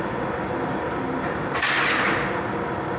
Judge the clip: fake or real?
real